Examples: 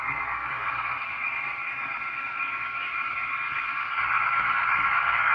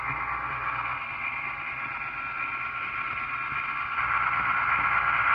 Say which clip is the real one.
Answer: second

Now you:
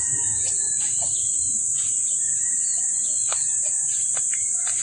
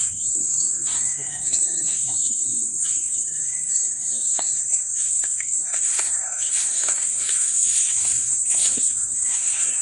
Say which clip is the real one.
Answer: first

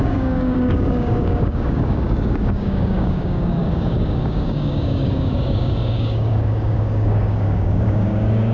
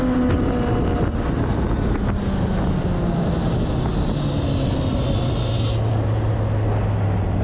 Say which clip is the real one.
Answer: second